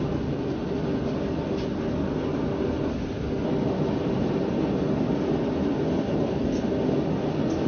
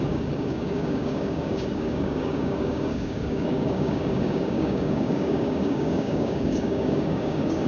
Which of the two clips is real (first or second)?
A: first